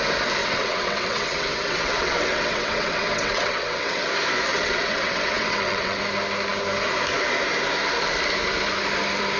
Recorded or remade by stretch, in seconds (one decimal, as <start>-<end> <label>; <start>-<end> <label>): 0.0-0.4 recorded; 0.4-4.1 remade; 4.1-4.5 recorded; 4.5-6.0 remade; 6.0-9.4 recorded